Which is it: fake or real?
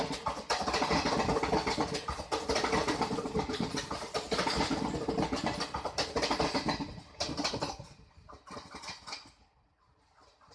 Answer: real